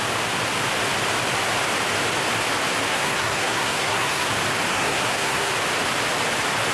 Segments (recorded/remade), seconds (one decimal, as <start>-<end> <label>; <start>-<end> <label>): 0.0-2.9 recorded; 2.9-4.3 remade; 4.3-4.7 recorded; 4.7-5.5 remade; 5.5-6.7 recorded